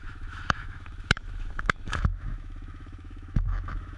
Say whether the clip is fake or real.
fake